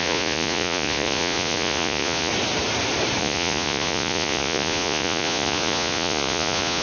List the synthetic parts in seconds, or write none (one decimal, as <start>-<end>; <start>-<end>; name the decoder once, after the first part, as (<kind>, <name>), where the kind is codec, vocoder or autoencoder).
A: 0.0-2.3 (vocoder, Vocos); 3.2-6.8